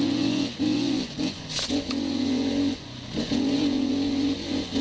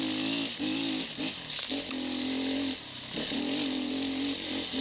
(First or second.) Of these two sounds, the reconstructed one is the first